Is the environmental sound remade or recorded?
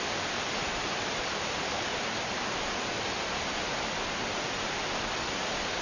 recorded